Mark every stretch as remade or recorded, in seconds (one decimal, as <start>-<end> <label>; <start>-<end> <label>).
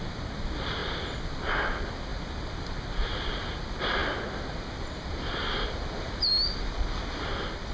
0.0-7.7 recorded